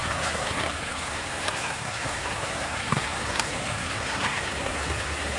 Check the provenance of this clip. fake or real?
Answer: fake